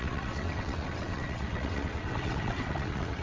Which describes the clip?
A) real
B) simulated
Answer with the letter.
B